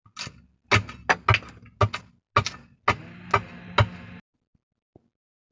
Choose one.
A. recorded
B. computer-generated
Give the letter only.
A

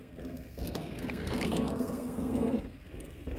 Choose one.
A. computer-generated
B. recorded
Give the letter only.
A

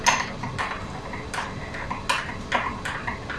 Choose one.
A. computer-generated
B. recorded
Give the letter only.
B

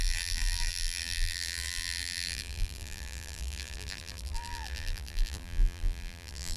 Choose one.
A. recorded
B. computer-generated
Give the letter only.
B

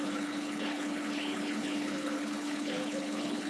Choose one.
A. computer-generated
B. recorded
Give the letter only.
A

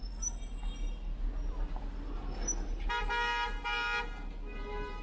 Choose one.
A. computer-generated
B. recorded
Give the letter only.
B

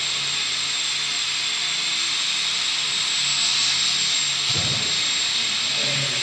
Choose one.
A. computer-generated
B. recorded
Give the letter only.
B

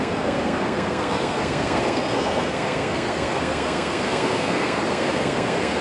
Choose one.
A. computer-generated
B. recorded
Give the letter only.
A